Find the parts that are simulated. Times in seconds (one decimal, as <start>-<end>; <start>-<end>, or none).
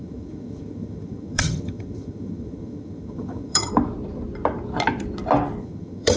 0.0-3.7; 5.6-6.2